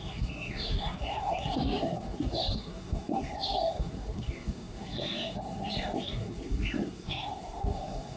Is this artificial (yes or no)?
yes